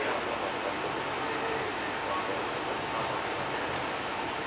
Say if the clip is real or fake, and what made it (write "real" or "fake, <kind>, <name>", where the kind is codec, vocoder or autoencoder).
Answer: real